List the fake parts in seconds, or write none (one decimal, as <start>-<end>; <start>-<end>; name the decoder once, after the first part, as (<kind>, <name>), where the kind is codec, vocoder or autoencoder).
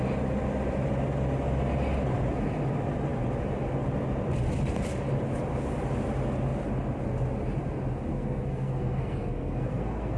8.1-10.2 (codec, SNAC)